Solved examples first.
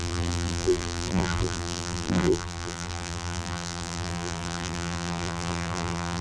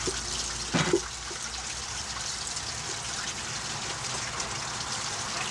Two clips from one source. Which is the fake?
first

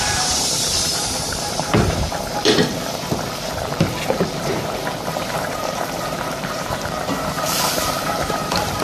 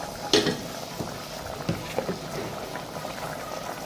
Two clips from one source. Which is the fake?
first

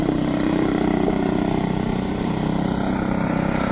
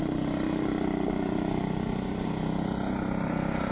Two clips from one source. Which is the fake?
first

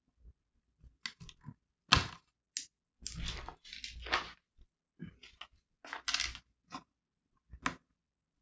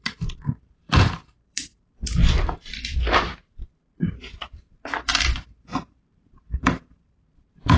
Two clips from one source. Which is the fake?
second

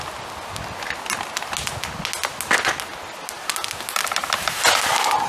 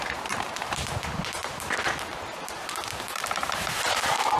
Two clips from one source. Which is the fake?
second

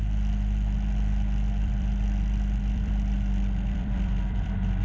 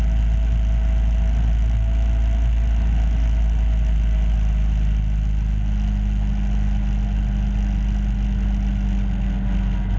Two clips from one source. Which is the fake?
first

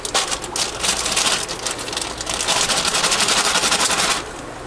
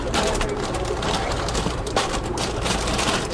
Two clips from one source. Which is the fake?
second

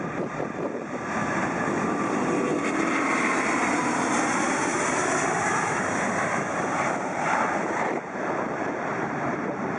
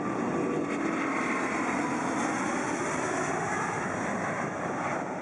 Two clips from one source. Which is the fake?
first